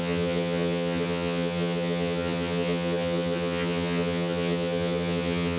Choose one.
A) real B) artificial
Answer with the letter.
B